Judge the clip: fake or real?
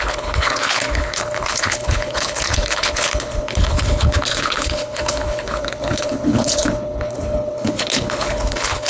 fake